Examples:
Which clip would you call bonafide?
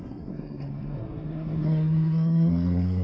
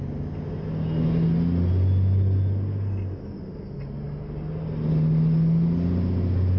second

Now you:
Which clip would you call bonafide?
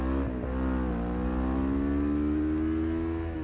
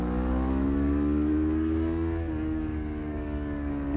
first